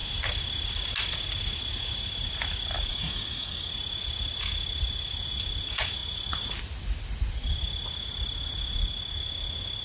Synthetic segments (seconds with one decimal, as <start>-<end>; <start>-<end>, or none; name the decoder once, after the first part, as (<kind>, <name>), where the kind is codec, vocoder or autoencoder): 2.9-3.7 (codec, DAC)